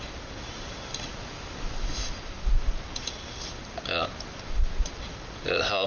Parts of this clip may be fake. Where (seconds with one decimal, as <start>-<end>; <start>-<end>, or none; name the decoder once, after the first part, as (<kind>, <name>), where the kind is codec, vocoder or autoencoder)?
none